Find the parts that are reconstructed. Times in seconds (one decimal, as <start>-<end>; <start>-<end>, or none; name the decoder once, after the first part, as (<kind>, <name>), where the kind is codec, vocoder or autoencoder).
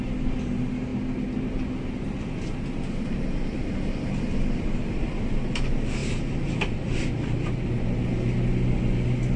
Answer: none